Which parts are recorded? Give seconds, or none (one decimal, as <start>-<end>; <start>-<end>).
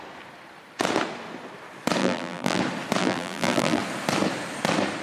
0.0-2.0; 2.6-3.0; 3.8-5.0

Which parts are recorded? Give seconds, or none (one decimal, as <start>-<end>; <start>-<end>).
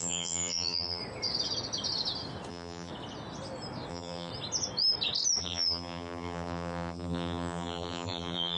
1.0-2.5; 2.9-3.9; 4.3-5.4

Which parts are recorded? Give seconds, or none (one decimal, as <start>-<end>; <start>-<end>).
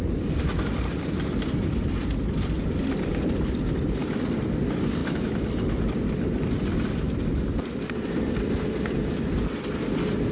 none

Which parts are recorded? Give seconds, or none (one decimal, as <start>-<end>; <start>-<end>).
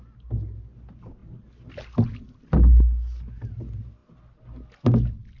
0.0-5.4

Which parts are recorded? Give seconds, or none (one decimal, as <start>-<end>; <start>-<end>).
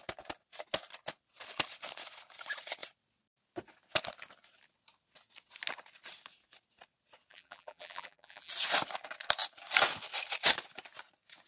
0.0-7.3; 8.5-11.5